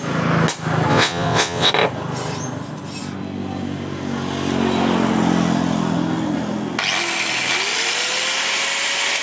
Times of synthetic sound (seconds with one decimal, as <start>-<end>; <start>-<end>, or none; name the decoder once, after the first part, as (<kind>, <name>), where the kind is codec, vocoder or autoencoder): 0.9-1.7 (vocoder, WaveNeXt)